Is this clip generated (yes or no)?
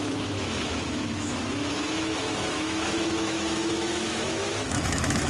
yes